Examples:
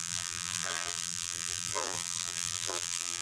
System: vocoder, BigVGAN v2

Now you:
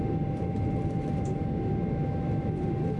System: none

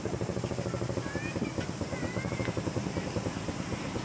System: none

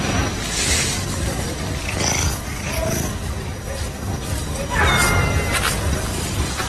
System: none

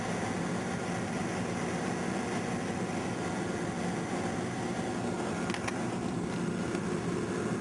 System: none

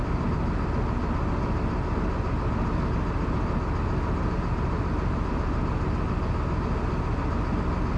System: none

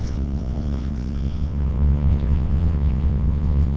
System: vocoder, WaveNeXt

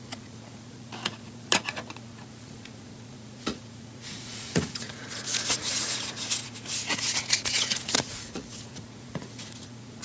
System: vocoder, Vocos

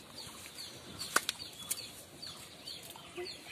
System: none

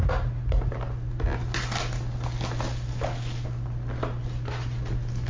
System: none